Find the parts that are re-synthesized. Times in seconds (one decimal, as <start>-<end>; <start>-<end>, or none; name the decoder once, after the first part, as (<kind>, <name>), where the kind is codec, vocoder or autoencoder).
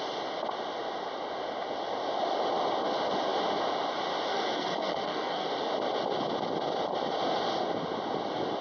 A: 4.3-5.5 (codec, SNAC)